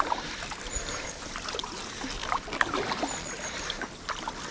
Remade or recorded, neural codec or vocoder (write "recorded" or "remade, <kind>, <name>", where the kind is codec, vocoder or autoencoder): recorded